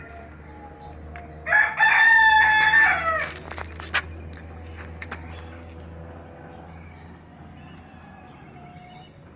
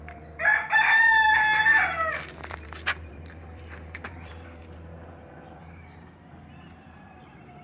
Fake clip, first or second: second